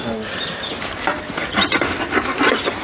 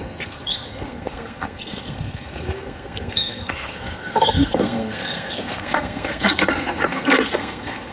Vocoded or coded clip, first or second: second